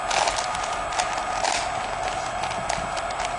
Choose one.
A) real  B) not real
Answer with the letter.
A